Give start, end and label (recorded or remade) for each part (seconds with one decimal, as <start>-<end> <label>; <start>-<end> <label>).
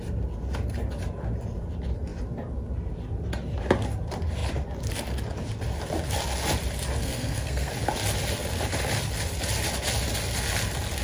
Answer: 0.0-7.0 recorded; 7.0-7.7 remade; 7.7-11.0 recorded